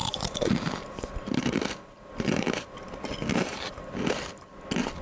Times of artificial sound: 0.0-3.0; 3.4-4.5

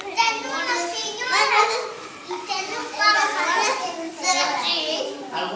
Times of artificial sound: 1.0-3.1; 3.7-5.0

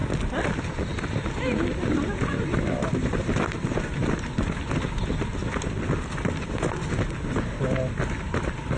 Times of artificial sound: none

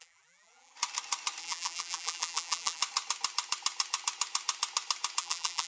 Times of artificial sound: 0.0-0.7; 1.4-2.8; 5.2-5.7